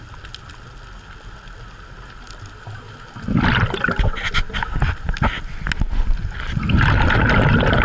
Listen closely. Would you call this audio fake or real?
real